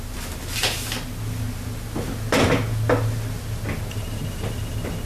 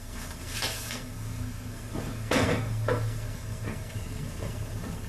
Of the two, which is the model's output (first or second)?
second